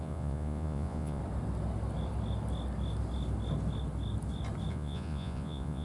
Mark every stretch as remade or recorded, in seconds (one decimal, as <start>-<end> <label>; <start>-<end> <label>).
0.0-1.2 remade; 1.2-4.7 recorded; 4.7-5.8 remade

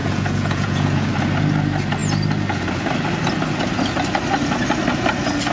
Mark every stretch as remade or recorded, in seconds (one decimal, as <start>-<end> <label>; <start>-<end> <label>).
0.0-1.1 remade; 1.1-5.5 recorded